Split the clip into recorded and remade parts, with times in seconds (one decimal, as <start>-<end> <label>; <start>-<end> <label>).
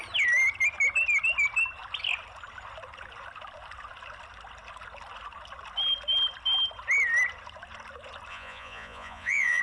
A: 0.0-8.3 recorded; 8.3-9.6 remade